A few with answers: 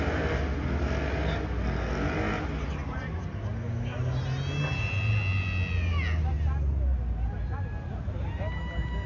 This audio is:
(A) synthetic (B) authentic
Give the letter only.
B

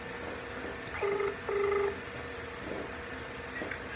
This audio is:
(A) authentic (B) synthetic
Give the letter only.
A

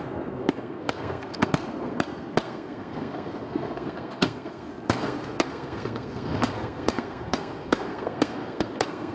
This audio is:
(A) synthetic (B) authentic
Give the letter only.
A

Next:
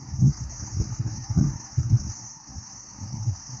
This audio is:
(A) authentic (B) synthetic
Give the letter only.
B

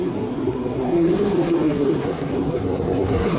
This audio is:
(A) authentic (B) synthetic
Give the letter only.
B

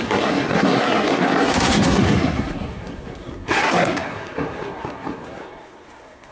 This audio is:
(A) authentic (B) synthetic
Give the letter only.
B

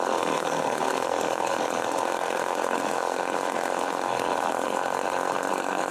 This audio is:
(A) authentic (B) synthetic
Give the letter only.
B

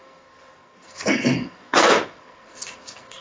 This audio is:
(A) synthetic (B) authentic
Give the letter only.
A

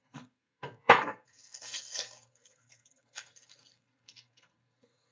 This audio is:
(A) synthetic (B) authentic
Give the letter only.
A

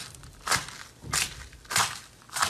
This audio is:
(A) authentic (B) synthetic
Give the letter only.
A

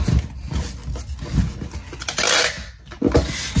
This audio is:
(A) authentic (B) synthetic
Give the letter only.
A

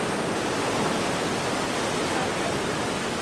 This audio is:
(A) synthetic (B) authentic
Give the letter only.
B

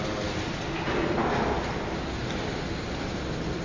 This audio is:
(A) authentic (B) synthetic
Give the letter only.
A